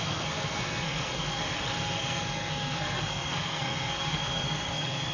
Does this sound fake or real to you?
fake